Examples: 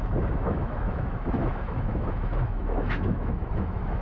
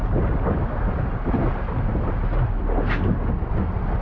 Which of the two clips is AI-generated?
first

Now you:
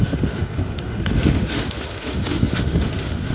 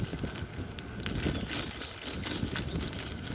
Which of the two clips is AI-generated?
first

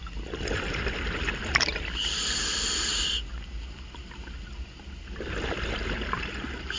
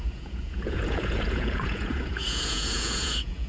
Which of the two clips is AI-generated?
second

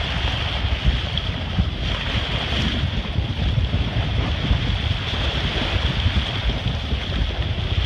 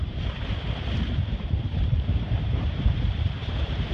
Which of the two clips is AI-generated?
second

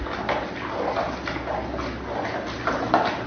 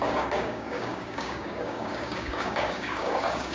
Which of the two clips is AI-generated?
second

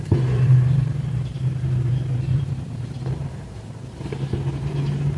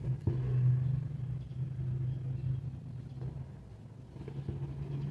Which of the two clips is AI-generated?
first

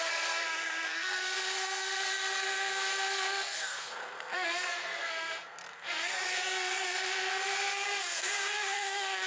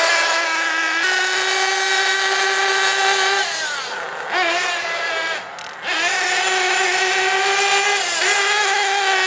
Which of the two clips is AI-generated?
first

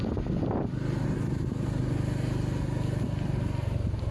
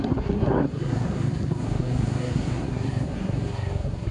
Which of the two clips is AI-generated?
second